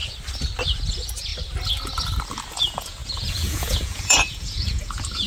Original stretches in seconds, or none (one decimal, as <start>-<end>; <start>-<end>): 0.0-0.9; 1.3-2.5